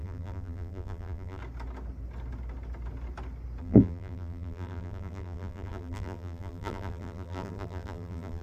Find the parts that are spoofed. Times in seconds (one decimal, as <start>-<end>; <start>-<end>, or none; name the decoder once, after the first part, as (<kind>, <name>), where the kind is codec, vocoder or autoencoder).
0.0-1.4 (vocoder, BigVGAN v2); 3.6-8.4